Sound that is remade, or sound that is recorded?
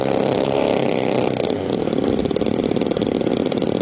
remade